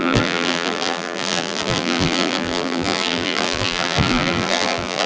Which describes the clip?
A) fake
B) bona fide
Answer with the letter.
A